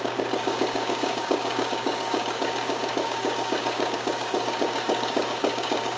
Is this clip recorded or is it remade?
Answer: remade